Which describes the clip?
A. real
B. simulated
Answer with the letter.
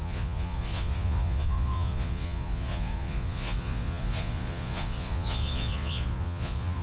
B